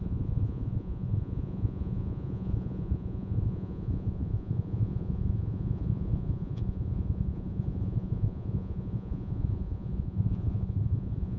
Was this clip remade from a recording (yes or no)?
yes